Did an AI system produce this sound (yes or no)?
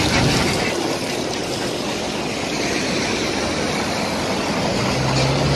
no